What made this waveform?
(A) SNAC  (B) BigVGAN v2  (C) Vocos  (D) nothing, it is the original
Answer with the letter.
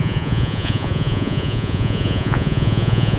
C